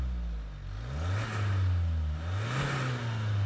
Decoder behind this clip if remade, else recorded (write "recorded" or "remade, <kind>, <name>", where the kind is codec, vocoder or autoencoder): recorded